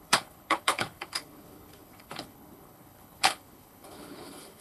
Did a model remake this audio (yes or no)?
yes